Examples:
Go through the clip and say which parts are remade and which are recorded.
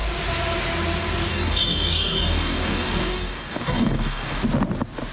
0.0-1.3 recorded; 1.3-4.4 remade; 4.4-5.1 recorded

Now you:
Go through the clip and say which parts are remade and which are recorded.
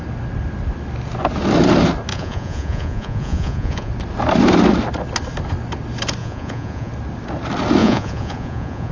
0.0-2.1 recorded; 2.1-3.9 remade; 3.9-6.2 recorded; 6.2-6.9 remade; 6.9-7.8 recorded; 7.8-8.9 remade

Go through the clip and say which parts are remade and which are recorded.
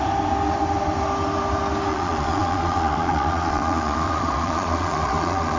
0.0-1.9 recorded; 1.9-5.6 remade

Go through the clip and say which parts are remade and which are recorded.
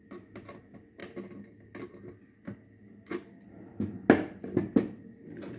0.0-5.6 recorded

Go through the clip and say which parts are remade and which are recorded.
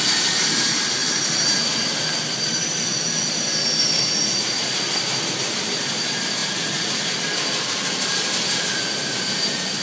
0.0-1.0 remade; 1.0-4.4 recorded; 4.4-9.8 remade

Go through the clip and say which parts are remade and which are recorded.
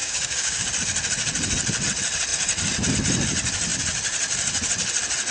0.0-0.7 remade; 0.7-5.3 recorded